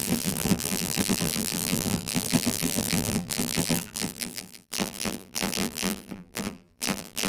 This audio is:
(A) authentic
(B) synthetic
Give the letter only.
B